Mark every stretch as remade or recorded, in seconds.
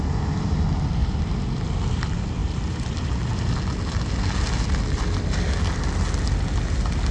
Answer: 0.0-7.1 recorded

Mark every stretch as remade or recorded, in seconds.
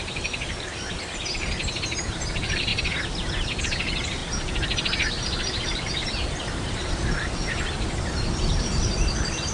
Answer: 0.0-0.7 remade; 0.7-1.8 recorded; 1.8-2.7 remade; 2.7-3.6 recorded; 3.6-9.5 remade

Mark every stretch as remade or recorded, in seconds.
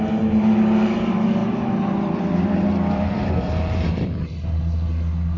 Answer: 0.0-1.4 recorded; 1.4-4.6 remade; 4.6-5.4 recorded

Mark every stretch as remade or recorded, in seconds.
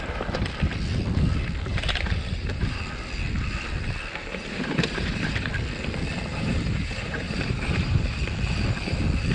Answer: 0.0-1.7 recorded; 1.7-2.8 remade; 2.8-4.2 recorded; 4.2-5.5 remade; 5.5-6.3 recorded; 6.3-8.2 remade; 8.2-9.3 recorded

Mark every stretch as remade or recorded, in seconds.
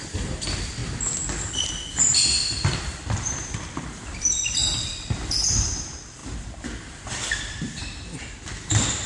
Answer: 0.0-0.8 remade; 0.8-2.8 recorded; 2.8-7.8 remade; 7.8-8.6 recorded; 8.6-9.1 remade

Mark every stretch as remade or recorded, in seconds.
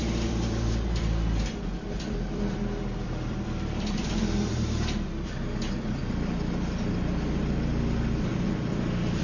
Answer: 0.0-6.0 remade; 6.0-9.2 recorded